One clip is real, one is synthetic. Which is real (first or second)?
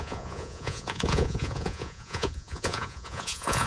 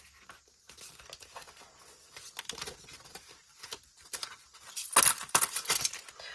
second